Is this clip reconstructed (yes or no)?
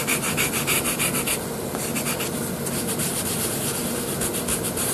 no